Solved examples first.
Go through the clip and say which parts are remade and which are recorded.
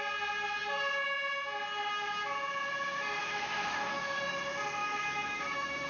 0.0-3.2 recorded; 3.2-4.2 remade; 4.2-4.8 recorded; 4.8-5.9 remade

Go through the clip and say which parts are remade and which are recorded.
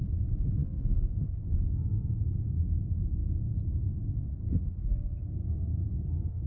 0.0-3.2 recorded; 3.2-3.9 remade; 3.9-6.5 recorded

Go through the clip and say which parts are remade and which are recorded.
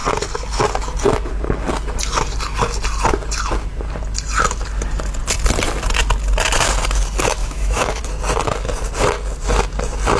0.0-7.4 recorded; 7.4-8.0 remade; 8.0-10.2 recorded